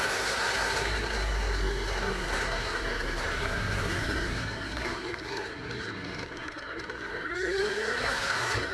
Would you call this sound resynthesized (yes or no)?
yes